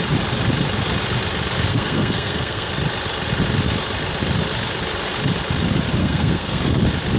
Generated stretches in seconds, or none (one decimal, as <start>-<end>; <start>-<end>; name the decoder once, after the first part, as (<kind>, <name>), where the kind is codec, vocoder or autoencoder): 1.7-2.7 (codec, SNAC); 6.0-6.6